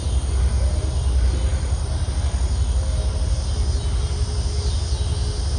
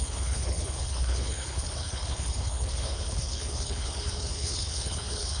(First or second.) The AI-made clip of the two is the second